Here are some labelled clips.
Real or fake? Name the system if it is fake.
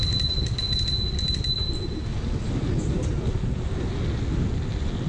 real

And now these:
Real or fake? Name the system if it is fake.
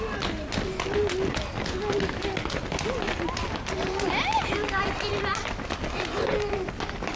real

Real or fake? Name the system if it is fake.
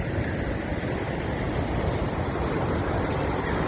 real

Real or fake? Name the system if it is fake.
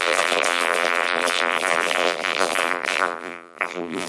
fake, vocoder, BigVGAN v2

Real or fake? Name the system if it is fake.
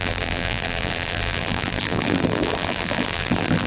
fake, vocoder, BigVGAN v2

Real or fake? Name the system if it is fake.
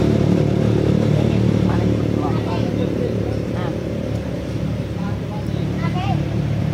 fake, vocoder, BigVGAN v2